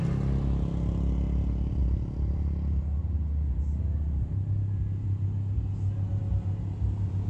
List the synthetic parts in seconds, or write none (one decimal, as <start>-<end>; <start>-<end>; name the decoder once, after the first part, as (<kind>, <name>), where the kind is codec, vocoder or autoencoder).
none